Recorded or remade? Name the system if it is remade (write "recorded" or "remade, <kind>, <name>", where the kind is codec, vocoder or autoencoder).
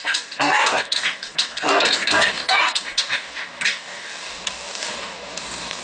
remade, codec, DAC